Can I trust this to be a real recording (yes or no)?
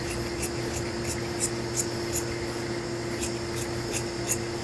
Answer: yes